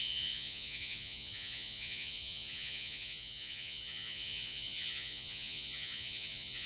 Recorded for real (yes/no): no